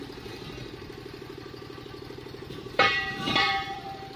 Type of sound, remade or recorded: remade